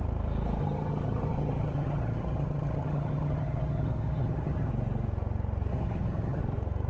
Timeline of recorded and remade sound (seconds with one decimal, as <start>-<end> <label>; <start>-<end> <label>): 0.0-0.6 recorded; 0.6-4.7 remade; 4.7-5.7 recorded; 5.7-6.4 remade; 6.4-6.9 recorded

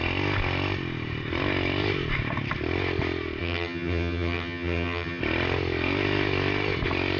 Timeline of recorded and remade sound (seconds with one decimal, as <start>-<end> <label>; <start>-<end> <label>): 0.0-3.4 recorded; 3.4-5.2 remade; 5.2-7.2 recorded

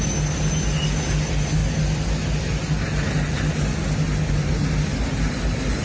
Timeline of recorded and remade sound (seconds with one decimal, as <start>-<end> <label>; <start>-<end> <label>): 0.0-5.8 recorded

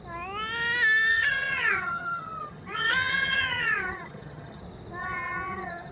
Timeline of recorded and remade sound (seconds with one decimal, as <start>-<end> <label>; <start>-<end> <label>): 0.0-1.1 recorded; 1.1-4.6 remade; 4.6-5.0 recorded; 5.0-5.9 remade

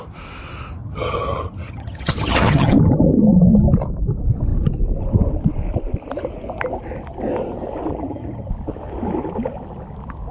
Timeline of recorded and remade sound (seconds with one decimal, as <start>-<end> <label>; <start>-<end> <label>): 0.0-0.8 recorded; 0.8-2.8 remade; 2.8-7.9 recorded; 7.9-8.5 remade; 8.5-10.3 recorded

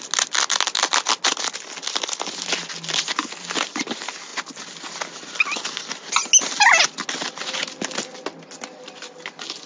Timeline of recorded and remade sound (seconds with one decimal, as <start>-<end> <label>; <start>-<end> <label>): 0.0-9.7 recorded

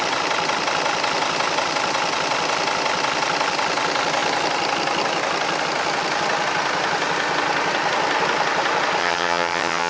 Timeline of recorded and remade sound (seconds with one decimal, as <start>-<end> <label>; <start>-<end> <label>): 0.0-9.0 recorded; 9.0-9.9 remade